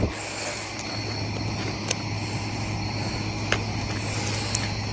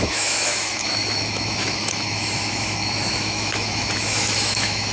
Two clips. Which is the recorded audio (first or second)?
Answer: first